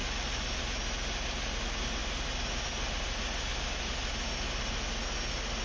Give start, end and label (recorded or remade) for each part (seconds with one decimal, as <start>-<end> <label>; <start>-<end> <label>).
0.0-5.6 recorded